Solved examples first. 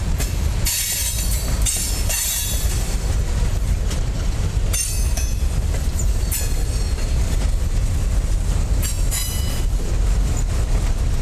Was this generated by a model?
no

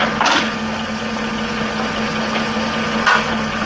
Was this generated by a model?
no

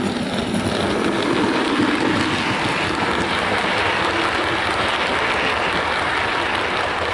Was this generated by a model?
no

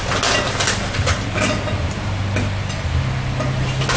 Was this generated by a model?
no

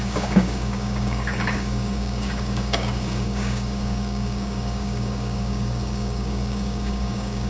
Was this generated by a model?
yes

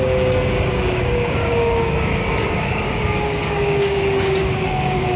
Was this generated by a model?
yes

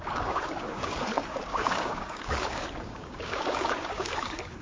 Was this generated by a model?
yes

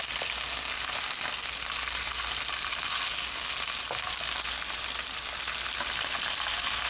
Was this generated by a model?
no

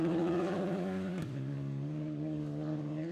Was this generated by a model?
yes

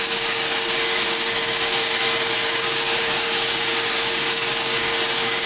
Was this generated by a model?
yes